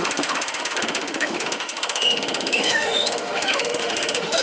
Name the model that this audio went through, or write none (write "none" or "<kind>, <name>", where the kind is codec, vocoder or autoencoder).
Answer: autoencoder, DAC-VAE